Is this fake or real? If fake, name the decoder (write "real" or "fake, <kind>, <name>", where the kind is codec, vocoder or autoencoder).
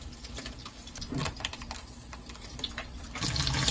real